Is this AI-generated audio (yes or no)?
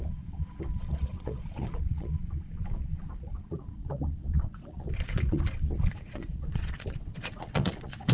yes